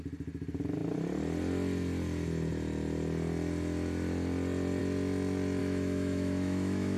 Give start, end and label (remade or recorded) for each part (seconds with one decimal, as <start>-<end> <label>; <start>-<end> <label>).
0.0-5.6 recorded; 5.6-7.0 remade